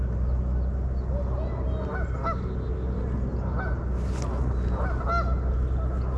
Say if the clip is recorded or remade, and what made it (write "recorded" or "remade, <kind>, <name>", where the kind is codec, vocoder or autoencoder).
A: recorded